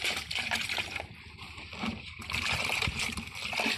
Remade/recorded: recorded